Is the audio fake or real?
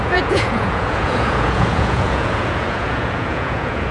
fake